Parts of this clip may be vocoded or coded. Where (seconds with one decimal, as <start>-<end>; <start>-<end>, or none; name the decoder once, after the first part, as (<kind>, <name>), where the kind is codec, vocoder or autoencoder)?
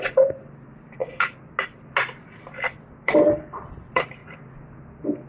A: 0.0-1.0 (vocoder, BigVGAN v2); 3.0-4.2